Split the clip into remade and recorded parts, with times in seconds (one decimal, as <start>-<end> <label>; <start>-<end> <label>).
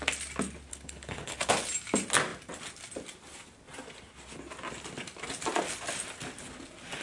0.0-0.7 recorded; 0.7-1.5 remade; 1.5-7.0 recorded